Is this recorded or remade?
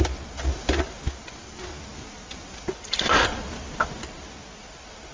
remade